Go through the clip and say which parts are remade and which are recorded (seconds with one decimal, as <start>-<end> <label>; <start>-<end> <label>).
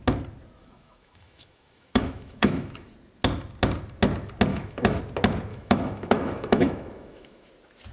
0.0-0.6 recorded; 0.6-2.9 remade; 2.9-4.5 recorded; 4.5-5.0 remade; 5.0-5.5 recorded; 5.5-7.5 remade; 7.5-7.9 recorded